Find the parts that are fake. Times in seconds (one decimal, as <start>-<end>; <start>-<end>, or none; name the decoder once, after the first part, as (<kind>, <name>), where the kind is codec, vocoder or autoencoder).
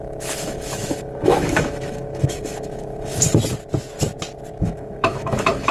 0.0-3.3 (autoencoder, DAC-VAE); 4.5-5.7